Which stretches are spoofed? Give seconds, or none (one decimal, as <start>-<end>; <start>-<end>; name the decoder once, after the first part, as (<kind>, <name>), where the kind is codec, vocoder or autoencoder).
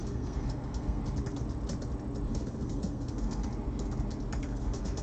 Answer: 0.0-1.0 (codec, SNAC); 2.3-3.4; 4.4-5.0